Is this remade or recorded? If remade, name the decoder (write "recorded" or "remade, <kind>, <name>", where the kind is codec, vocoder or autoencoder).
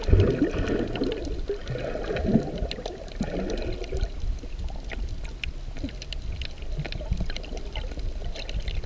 recorded